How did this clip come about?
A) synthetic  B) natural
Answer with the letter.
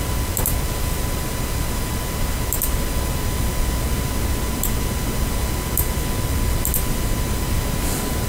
B